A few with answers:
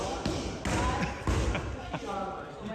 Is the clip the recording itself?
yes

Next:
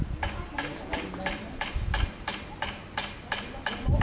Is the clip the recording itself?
yes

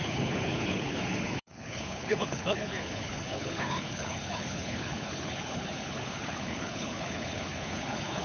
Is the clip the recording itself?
no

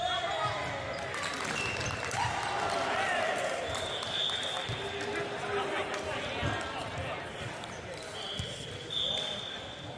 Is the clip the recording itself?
yes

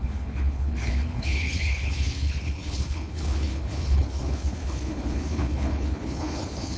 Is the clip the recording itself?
no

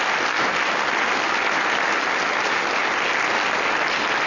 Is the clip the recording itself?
yes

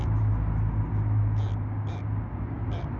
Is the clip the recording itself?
yes